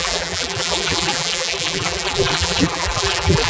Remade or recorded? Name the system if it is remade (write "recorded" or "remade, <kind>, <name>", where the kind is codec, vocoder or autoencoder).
remade, vocoder, BigVGAN v2